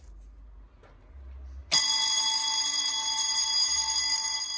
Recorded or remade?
recorded